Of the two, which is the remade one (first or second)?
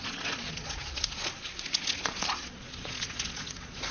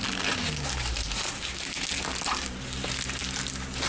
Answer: first